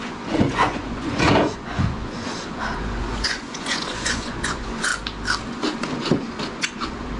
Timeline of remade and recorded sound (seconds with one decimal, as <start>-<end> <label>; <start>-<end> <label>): 0.0-4.9 remade; 4.9-5.4 recorded; 5.4-7.2 remade